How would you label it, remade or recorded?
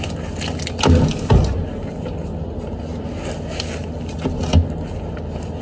recorded